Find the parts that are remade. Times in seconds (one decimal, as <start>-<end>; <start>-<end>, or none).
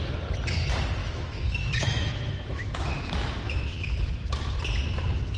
1.0-3.9